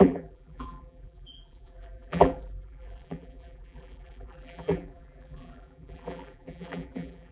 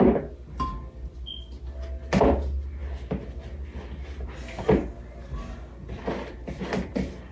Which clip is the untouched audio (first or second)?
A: second